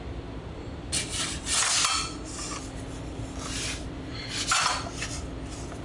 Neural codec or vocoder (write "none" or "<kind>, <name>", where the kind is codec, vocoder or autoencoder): none